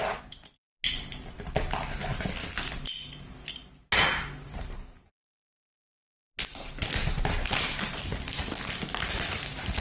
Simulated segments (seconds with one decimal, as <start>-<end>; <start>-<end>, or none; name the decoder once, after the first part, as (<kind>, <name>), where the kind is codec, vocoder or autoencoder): none